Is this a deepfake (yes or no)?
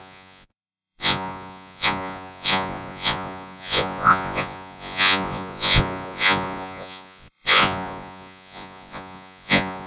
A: yes